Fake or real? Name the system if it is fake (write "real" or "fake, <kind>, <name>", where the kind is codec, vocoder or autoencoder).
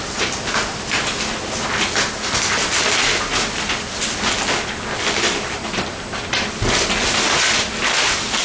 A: real